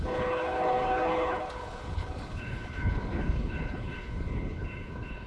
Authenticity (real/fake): fake